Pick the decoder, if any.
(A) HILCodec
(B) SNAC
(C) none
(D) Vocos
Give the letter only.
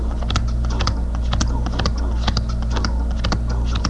C